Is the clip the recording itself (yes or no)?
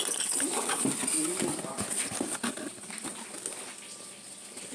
yes